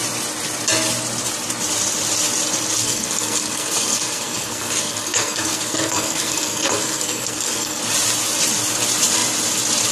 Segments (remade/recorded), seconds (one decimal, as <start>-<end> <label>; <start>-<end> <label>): 0.0-2.8 recorded; 2.8-7.8 remade; 7.8-9.9 recorded